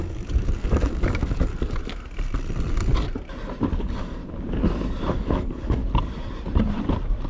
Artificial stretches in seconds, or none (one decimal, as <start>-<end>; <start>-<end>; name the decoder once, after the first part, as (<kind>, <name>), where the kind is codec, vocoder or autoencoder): 0.0-1.5 (codec, DAC); 3.8-4.2; 5.1-5.8